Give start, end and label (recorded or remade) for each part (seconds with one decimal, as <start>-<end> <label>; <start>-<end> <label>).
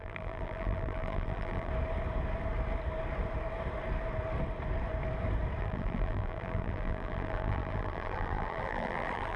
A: 0.0-1.7 remade; 1.7-5.6 recorded; 5.6-9.4 remade